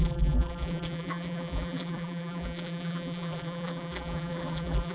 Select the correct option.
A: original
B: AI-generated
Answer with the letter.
B